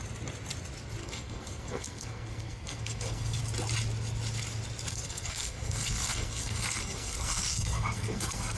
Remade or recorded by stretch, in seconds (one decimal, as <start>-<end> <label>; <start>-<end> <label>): 0.0-1.0 recorded; 1.0-3.4 remade; 3.4-4.9 recorded; 4.9-8.6 remade